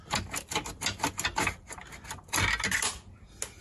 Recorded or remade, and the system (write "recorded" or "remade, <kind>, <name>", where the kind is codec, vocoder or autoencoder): recorded